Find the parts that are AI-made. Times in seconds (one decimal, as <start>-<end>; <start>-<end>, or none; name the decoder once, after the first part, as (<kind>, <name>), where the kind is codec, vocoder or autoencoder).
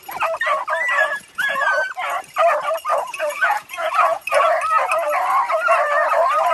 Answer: 1.0-1.7 (vocoder, Vocos); 2.9-4.4